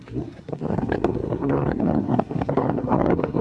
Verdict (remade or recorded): remade